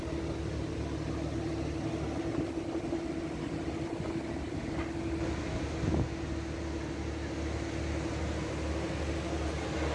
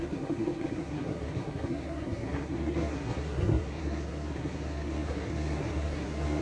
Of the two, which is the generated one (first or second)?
second